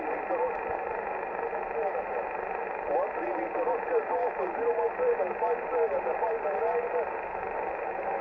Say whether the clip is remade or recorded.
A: recorded